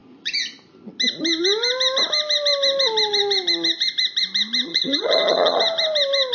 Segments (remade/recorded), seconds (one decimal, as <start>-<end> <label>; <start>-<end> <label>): 0.0-4.7 recorded; 4.7-5.6 remade; 5.6-6.3 recorded